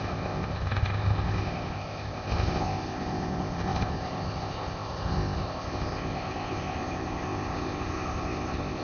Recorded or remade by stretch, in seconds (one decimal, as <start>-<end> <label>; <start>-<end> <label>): 0.0-8.8 remade

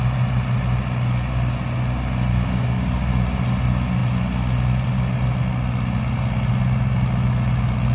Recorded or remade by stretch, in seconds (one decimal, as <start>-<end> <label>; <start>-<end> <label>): 0.0-2.3 recorded; 2.3-3.1 remade; 3.1-7.9 recorded

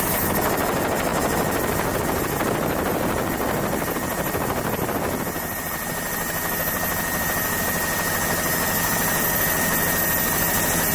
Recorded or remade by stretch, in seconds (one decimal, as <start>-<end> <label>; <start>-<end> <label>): 0.0-10.9 recorded

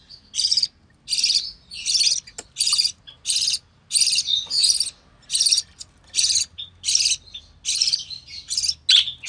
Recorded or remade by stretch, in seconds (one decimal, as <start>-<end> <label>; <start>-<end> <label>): 0.0-9.3 recorded

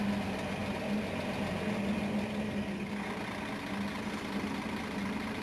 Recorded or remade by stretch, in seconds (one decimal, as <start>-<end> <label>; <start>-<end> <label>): 0.0-5.4 recorded